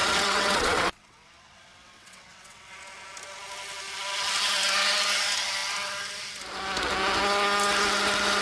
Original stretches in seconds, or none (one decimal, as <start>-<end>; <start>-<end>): 2.7-8.4